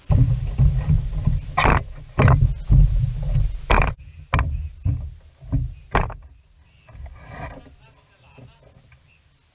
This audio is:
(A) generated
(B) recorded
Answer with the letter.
B